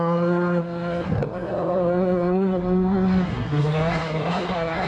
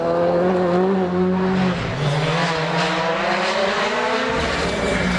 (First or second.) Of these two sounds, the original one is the second